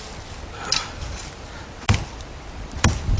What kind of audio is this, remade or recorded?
recorded